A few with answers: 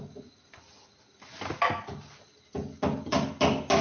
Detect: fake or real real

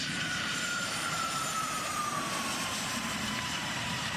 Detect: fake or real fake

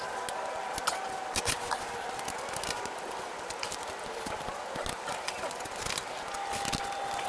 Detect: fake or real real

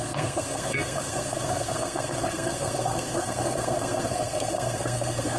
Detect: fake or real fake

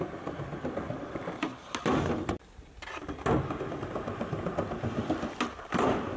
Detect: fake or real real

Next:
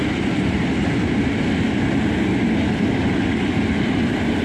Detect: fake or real real